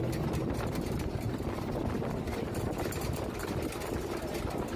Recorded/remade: recorded